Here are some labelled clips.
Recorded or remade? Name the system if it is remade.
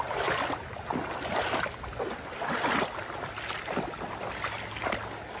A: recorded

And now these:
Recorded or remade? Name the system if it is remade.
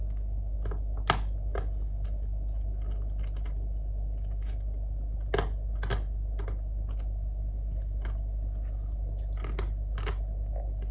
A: recorded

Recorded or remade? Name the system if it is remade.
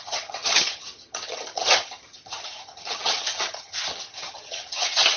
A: remade, vocoder, HiFi-GAN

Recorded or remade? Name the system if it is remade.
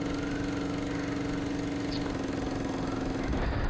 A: recorded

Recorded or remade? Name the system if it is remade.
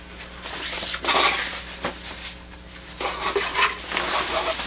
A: recorded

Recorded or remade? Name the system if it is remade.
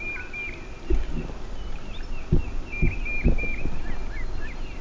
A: recorded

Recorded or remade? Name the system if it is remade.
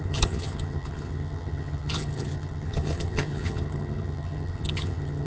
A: remade, vocoder, HiFi-GAN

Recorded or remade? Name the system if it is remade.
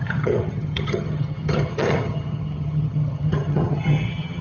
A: remade, vocoder, HiFi-GAN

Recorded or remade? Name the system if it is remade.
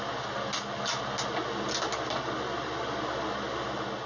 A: recorded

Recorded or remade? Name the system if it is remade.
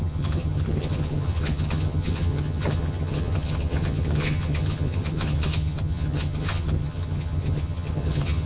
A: remade, vocoder, HiFi-GAN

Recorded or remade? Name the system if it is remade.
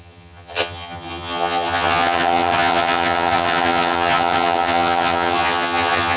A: remade, vocoder, HiFi-GAN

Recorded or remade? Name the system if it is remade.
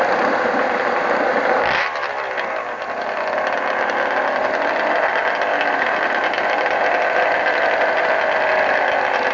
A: recorded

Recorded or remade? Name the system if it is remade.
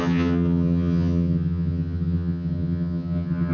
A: remade, vocoder, HiFi-GAN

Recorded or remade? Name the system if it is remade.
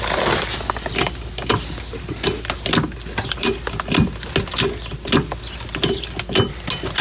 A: recorded